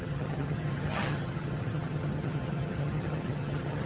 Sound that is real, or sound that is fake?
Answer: fake